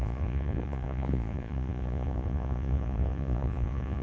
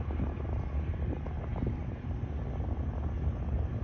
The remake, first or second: first